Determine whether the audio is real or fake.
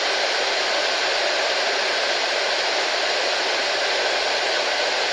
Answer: real